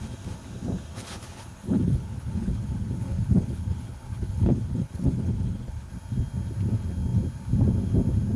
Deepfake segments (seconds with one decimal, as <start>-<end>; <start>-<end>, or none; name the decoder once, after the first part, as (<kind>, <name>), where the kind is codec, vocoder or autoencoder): 0.9-5.9 (codec, HILCodec)